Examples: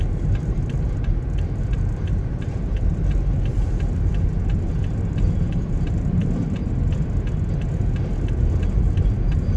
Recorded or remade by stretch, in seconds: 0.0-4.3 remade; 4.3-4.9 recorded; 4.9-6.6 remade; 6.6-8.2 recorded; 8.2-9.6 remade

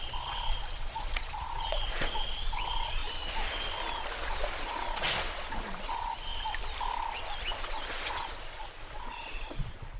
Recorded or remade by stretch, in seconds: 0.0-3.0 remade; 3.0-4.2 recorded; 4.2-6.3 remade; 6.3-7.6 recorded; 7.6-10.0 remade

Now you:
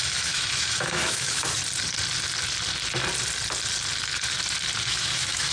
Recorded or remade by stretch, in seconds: 0.0-1.6 remade; 1.6-4.9 recorded; 4.9-5.5 remade

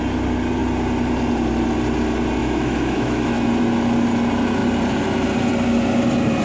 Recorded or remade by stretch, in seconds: 0.0-2.4 recorded; 2.4-3.5 remade; 3.5-6.4 recorded